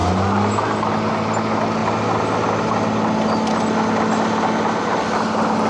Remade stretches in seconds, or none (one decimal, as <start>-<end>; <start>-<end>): none